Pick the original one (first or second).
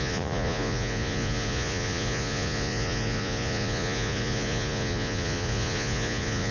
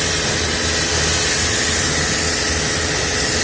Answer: second